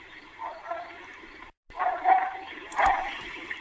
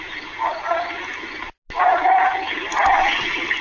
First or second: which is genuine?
second